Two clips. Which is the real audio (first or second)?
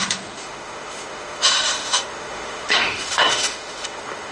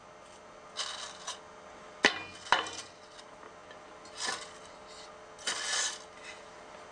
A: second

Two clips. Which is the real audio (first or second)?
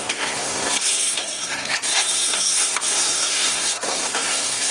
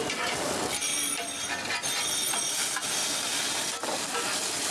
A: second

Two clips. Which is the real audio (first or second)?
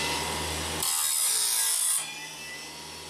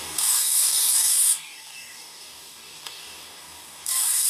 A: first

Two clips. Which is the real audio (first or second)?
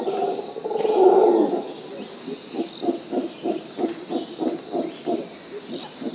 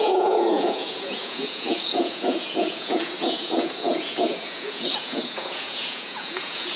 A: first